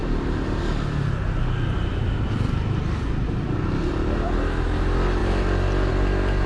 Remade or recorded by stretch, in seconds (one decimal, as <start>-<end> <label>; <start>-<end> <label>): 0.0-6.5 recorded